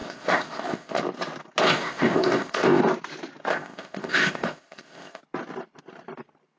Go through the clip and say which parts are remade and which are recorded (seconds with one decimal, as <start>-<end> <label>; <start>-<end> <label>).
0.0-1.0 remade; 1.0-1.6 recorded; 1.6-2.8 remade; 2.8-3.5 recorded; 3.5-5.2 remade; 5.2-6.6 recorded